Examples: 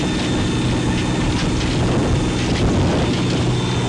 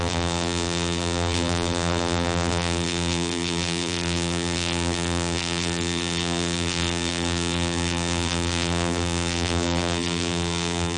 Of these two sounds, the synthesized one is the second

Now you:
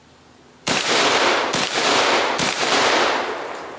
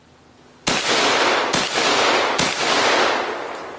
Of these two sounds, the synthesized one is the first